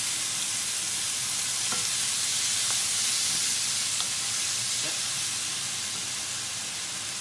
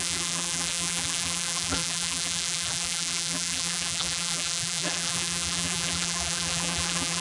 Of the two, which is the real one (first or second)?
first